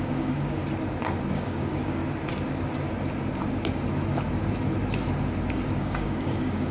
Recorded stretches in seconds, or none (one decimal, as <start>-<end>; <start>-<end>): 0.6-1.3; 2.0-5.5